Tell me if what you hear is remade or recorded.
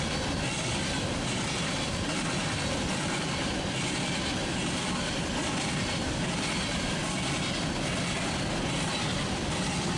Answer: recorded